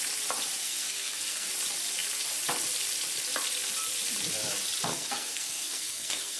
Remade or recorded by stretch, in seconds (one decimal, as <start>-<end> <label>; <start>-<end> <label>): 0.0-0.6 recorded; 0.6-1.5 remade; 1.5-4.9 recorded; 4.9-6.4 remade